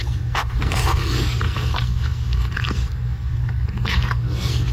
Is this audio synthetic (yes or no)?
yes